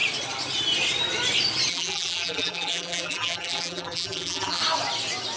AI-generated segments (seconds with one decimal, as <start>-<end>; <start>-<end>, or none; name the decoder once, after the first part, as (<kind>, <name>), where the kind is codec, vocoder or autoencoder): 1.7-4.6 (vocoder, BigVGAN v2)